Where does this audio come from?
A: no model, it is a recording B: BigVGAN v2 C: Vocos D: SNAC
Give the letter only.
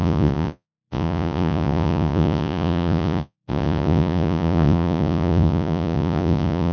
C